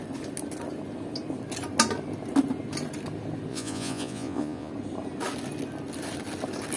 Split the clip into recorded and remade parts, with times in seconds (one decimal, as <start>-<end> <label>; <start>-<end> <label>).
0.0-3.5 recorded; 3.5-4.7 remade; 4.7-6.8 recorded